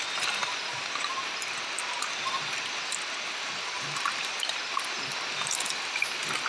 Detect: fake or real real